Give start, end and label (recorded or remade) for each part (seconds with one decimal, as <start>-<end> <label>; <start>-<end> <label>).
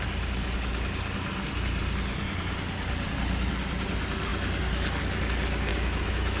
0.0-5.7 recorded; 5.7-6.4 remade